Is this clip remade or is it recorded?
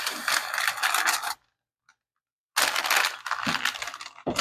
recorded